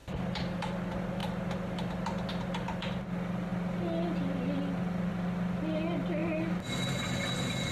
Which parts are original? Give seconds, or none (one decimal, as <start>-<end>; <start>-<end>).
0.0-7.7